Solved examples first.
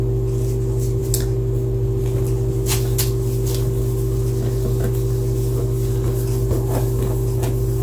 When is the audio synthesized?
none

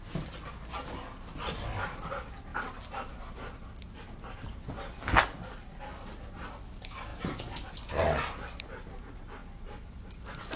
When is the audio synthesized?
none

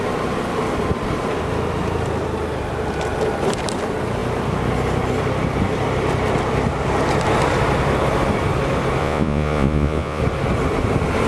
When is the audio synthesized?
9.0-10.2 (vocoder, Vocos)